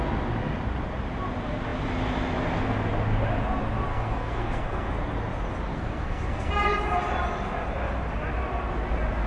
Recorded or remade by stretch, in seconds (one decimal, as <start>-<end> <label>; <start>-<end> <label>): 0.0-3.9 recorded; 3.9-4.9 remade; 4.9-5.7 recorded; 5.7-6.5 remade; 6.5-9.3 recorded